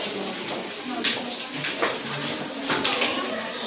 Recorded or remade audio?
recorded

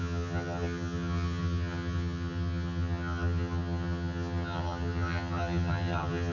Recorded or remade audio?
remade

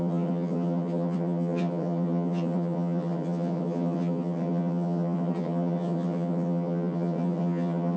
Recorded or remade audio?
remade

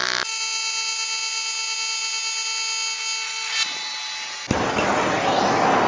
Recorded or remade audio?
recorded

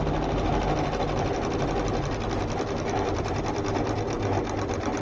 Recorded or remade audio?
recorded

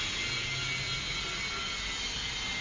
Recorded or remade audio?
recorded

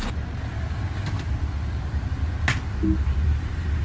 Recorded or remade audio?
recorded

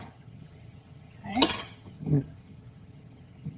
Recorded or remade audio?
remade